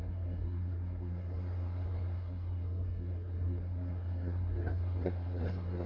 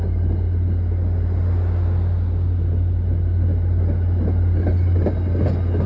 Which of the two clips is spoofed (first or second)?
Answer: first